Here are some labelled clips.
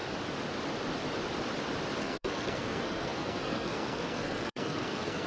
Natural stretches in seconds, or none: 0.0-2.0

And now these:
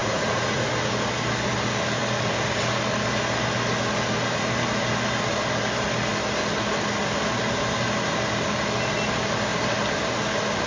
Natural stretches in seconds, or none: 0.7-10.7

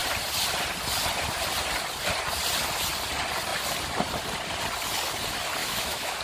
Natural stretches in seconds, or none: 0.0-5.6

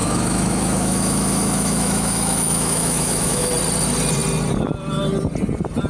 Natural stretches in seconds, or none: 3.5-5.9

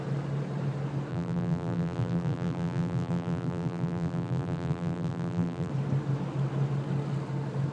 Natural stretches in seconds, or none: 0.0-1.1; 5.7-7.7

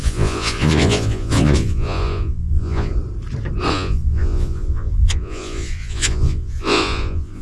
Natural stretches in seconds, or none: 2.9-3.7

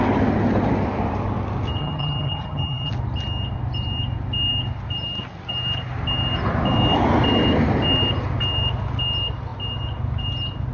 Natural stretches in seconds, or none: 0.0-1.8; 2.9-10.7

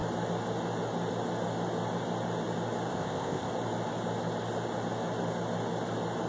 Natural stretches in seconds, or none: 0.0-2.9; 3.5-6.3